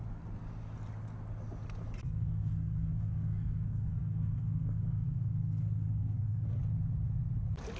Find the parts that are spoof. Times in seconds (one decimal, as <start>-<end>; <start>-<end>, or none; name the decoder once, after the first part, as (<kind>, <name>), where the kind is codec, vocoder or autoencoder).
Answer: 2.0-6.6 (codec, SNAC)